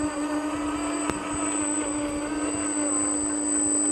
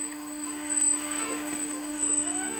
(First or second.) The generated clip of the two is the second